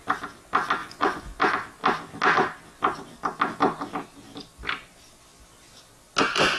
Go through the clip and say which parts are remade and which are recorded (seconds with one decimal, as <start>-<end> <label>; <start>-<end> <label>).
0.0-0.8 recorded; 0.8-1.4 remade; 1.4-6.6 recorded

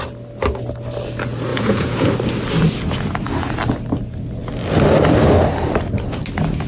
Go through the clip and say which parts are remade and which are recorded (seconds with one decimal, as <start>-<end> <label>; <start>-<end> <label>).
0.0-1.5 recorded; 1.5-2.1 remade; 2.1-6.7 recorded

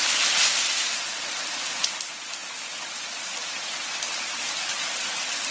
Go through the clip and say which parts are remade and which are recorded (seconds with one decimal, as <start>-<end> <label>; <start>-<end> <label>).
0.0-5.5 recorded

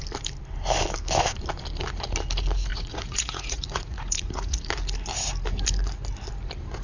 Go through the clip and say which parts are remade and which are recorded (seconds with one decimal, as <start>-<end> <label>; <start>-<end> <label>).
0.0-2.7 recorded; 2.7-4.7 remade; 4.7-6.8 recorded

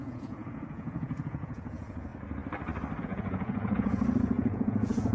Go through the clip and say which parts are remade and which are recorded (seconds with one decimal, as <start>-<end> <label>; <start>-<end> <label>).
0.0-2.1 remade; 2.1-3.0 recorded; 3.0-5.1 remade

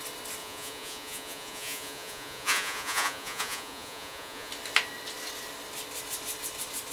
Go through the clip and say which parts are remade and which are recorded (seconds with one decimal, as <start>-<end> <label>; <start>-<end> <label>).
0.0-0.4 recorded; 0.4-4.5 remade; 4.5-6.9 recorded

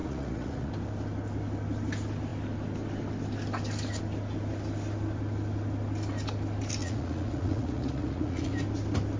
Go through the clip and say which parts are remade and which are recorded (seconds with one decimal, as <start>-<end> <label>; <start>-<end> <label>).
0.0-0.7 remade; 0.7-6.8 recorded; 6.8-8.5 remade; 8.5-9.2 recorded